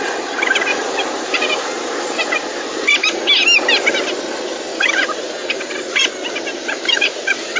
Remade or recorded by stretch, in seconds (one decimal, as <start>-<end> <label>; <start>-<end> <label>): 0.0-0.7 recorded; 0.7-2.9 remade; 2.9-4.7 recorded; 4.7-7.6 remade